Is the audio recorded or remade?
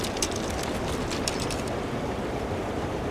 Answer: remade